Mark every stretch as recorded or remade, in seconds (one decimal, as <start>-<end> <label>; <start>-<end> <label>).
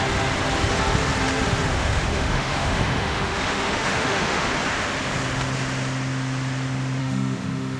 0.0-1.7 recorded; 1.7-4.5 remade; 4.5-7.0 recorded; 7.0-7.8 remade